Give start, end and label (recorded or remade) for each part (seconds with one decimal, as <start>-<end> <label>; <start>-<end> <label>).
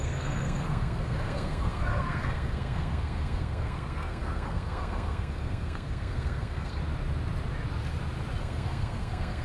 0.0-6.8 remade; 6.8-8.4 recorded; 8.4-9.4 remade